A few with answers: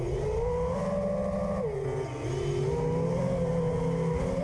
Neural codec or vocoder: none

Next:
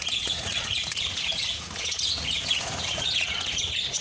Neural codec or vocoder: vocoder, Vocos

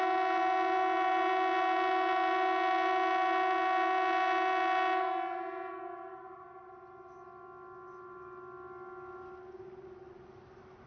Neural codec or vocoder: none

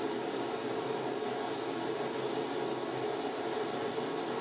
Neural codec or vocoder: none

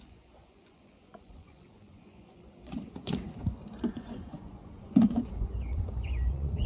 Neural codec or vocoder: vocoder, Vocos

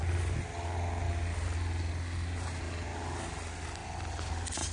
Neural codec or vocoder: none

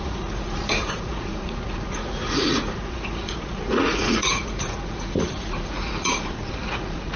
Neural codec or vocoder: vocoder, Vocos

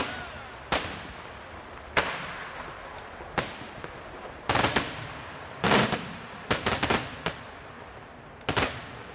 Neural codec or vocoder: none